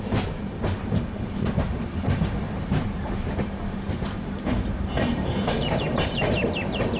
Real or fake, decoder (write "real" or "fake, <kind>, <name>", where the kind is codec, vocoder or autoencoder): fake, vocoder, BigVGAN v2